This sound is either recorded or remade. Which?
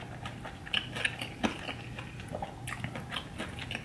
recorded